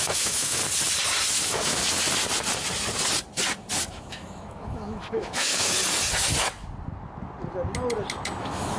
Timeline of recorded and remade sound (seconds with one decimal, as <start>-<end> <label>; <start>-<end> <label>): 0.0-0.6 remade; 0.6-1.4 recorded; 1.4-1.8 remade; 1.8-3.9 recorded; 3.9-5.8 remade; 5.8-8.4 recorded; 8.4-8.8 remade